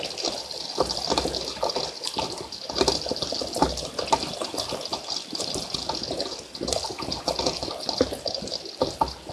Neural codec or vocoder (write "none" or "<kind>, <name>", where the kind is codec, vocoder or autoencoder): none